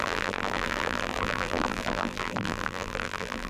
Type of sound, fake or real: fake